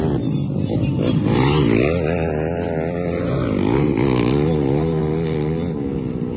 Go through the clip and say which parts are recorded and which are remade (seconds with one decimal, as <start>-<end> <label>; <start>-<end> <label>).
0.0-6.4 recorded